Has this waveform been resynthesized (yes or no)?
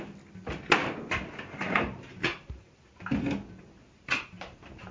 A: no